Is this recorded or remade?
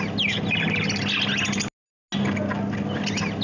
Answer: recorded